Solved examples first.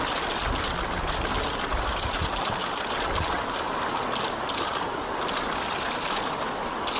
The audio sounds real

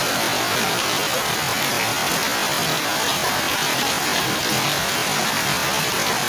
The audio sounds real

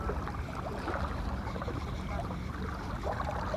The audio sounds real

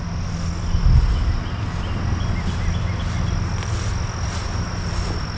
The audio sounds real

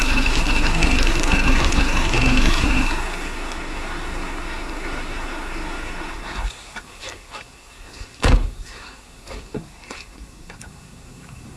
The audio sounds fake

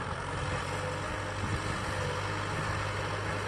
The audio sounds real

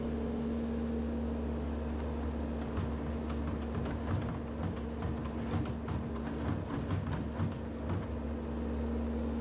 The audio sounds real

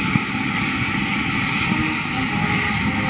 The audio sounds real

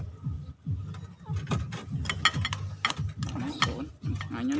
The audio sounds real